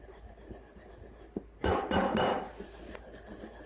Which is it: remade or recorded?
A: recorded